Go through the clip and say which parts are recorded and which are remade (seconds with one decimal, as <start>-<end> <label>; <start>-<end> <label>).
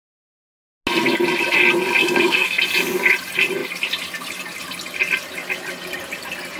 0.0-2.0 recorded; 2.0-2.6 remade; 2.6-6.6 recorded